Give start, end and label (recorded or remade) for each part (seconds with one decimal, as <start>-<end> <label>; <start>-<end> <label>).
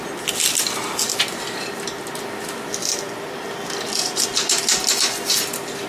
0.0-5.9 recorded